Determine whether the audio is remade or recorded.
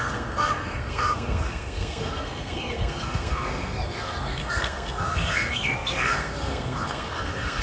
remade